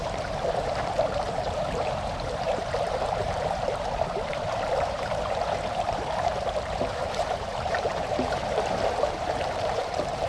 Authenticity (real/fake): fake